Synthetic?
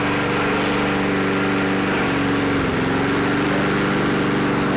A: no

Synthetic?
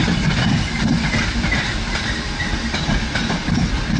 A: no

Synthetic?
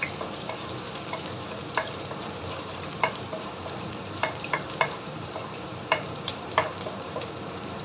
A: yes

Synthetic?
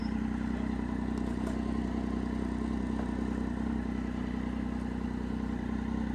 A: no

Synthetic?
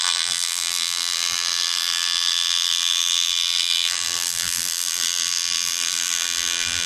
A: yes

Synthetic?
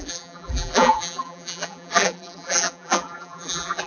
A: yes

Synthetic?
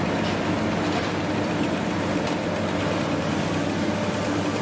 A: no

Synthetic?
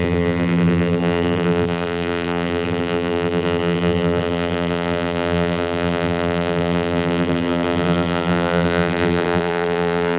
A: yes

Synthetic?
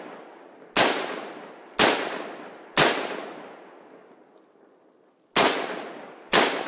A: no